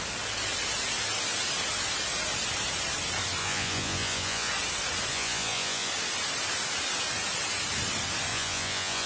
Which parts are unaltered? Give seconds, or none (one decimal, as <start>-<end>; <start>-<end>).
0.0-3.4; 4.5-5.1; 5.9-8.3